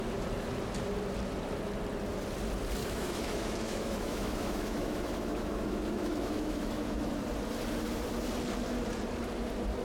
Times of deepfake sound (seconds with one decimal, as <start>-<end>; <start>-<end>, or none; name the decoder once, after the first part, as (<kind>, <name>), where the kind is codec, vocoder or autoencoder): 2.8-7.1 (autoencoder, DAC-VAE)